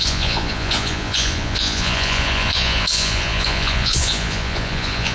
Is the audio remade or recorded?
remade